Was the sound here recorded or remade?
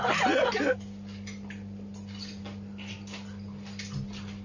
recorded